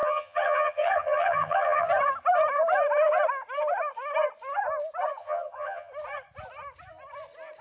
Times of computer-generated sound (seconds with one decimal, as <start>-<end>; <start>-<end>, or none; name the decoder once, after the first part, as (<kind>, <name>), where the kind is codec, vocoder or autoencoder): 0.0-1.9 (vocoder, HiFi-GAN); 5.2-5.9